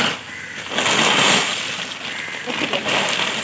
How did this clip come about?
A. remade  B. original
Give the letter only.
B